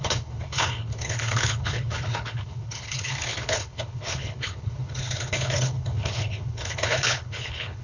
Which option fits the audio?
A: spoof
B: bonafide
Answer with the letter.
A